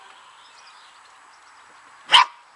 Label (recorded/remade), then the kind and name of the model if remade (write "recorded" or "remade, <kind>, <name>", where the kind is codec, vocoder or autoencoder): recorded